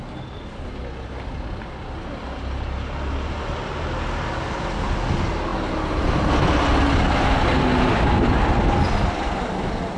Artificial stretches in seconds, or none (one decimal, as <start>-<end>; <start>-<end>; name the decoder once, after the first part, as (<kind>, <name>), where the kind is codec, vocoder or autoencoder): none